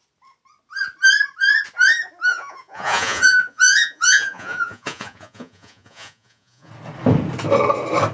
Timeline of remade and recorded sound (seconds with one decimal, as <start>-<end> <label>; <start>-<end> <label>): 0.0-2.3 recorded; 2.3-6.7 remade; 6.7-8.1 recorded